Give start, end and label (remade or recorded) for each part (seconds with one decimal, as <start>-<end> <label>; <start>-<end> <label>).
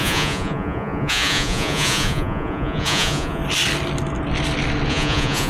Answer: 0.0-3.4 remade; 3.4-4.9 recorded; 4.9-5.5 remade